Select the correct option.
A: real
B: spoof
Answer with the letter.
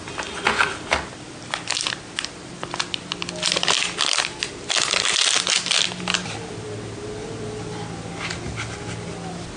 A